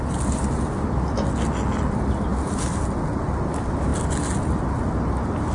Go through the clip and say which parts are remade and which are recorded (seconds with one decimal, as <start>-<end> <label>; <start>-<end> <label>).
0.0-5.5 recorded

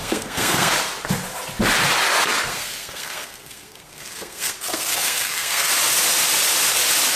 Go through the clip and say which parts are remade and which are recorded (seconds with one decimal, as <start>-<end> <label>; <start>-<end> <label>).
0.0-0.7 remade; 0.7-2.5 recorded; 2.5-5.7 remade; 5.7-7.2 recorded

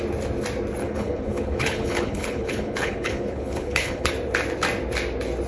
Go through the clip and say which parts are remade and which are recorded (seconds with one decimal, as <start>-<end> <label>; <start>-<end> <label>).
0.0-0.8 recorded; 0.8-4.1 remade; 4.1-5.5 recorded

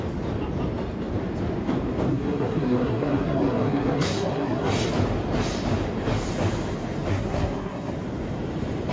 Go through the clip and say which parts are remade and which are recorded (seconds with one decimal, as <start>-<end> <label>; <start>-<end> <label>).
0.0-2.1 recorded; 2.1-4.7 remade; 4.7-7.1 recorded; 7.1-7.9 remade; 7.9-8.9 recorded

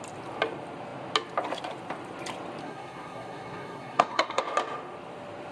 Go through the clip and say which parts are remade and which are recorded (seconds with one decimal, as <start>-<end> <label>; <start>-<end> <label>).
0.0-2.6 recorded; 2.6-4.4 remade; 4.4-5.5 recorded

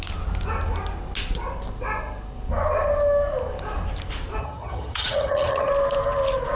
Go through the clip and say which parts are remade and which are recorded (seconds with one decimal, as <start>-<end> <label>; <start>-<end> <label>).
0.0-4.4 recorded; 4.4-5.7 remade; 5.7-6.6 recorded

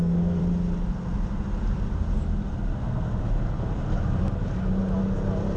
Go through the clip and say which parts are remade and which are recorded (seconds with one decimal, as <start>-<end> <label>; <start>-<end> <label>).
0.0-0.4 remade; 0.4-2.8 recorded; 2.8-3.2 remade; 3.2-5.6 recorded

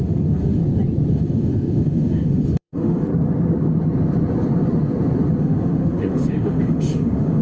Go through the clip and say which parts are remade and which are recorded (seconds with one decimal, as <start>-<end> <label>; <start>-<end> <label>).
0.0-0.6 remade; 0.6-1.1 recorded; 1.1-3.1 remade; 3.1-5.4 recorded; 5.4-7.4 remade